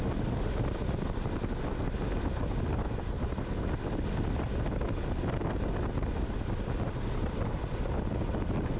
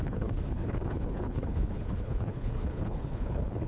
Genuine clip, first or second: first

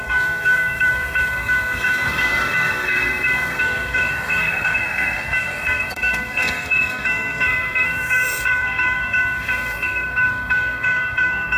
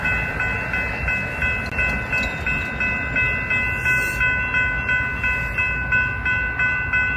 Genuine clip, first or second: second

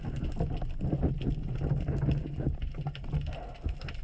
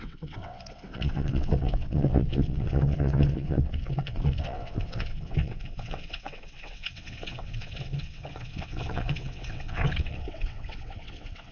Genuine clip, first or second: first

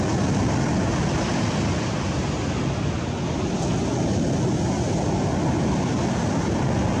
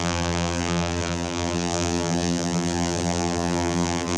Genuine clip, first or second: first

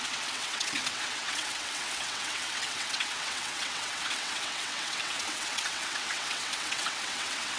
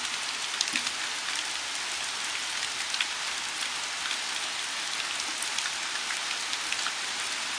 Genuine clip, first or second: second